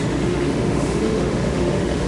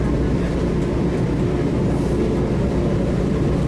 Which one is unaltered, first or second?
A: second